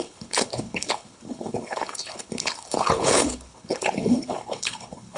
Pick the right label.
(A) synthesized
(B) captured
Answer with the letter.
A